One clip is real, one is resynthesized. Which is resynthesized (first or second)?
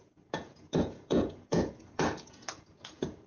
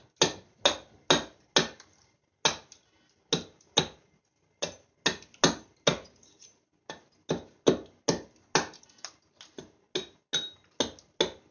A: first